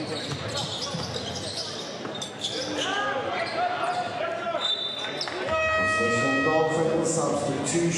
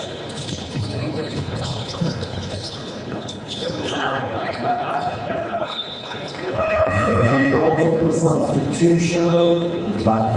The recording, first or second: first